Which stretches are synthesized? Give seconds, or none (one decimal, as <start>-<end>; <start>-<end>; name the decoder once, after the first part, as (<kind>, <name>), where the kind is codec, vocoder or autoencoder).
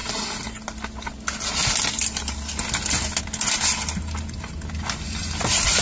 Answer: none